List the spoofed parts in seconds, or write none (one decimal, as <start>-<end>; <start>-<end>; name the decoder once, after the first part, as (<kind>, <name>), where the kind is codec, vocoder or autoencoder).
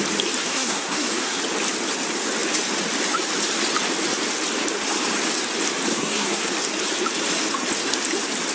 0.4-1.4 (codec, SNAC); 5.9-6.5